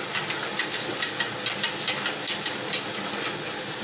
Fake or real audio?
real